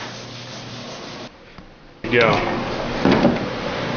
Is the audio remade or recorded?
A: recorded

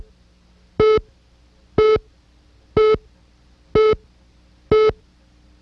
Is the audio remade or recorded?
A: recorded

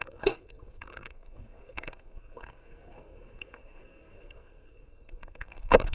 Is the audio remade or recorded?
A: remade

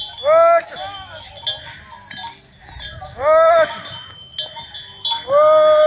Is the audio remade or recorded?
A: recorded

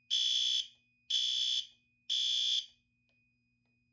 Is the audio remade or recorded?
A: recorded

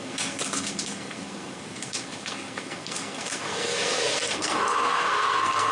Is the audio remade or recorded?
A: remade